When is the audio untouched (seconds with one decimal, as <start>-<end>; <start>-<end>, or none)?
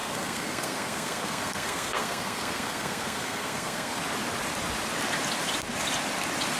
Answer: 4.0-6.6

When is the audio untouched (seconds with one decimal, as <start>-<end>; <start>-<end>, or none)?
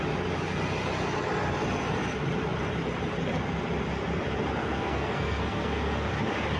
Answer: 0.0-4.6; 6.1-6.6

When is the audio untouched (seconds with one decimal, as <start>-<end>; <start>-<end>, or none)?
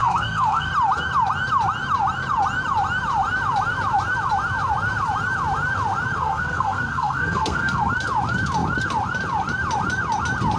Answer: 0.7-6.2; 7.9-10.6